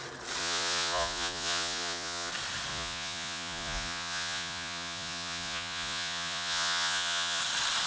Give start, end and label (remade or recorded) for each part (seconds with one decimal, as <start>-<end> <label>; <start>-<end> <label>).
0.0-0.4 recorded; 0.4-2.3 remade; 2.3-2.7 recorded; 2.7-7.4 remade; 7.4-7.9 recorded